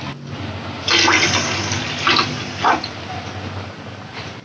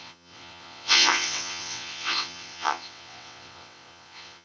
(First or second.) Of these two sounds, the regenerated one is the second